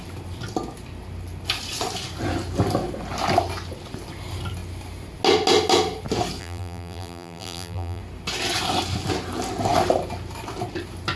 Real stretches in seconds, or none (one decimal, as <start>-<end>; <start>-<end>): 0.0-6.4; 8.0-11.2